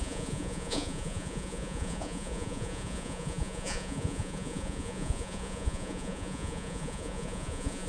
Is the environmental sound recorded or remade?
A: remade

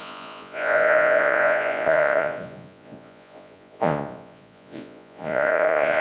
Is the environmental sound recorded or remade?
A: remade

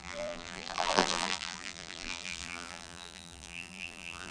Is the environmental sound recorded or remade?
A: remade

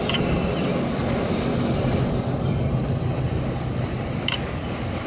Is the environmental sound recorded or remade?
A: recorded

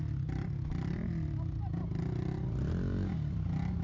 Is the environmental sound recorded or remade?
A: recorded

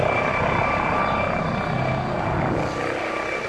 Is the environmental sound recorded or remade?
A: recorded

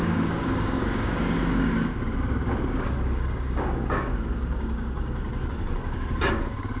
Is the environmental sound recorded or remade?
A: remade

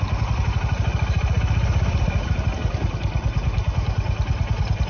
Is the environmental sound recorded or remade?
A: recorded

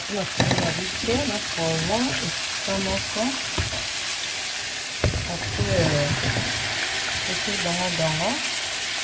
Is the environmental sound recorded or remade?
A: recorded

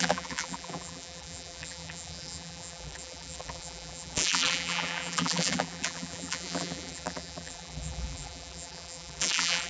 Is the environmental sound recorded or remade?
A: remade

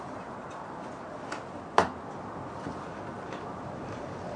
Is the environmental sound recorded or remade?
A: recorded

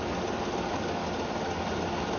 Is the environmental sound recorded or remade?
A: recorded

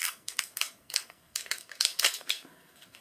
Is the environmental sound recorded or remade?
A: remade